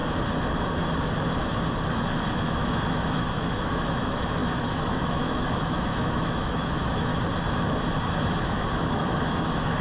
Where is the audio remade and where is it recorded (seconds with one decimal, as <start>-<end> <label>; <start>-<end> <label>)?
0.0-1.9 recorded; 1.9-7.1 remade; 7.1-8.4 recorded; 8.4-9.8 remade